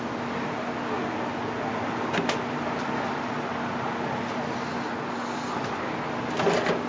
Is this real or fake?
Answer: real